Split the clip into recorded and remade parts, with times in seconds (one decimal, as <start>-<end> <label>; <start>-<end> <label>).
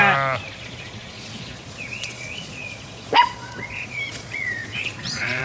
0.0-0.6 recorded; 0.6-5.4 remade